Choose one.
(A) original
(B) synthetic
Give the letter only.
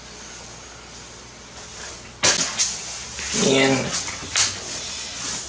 A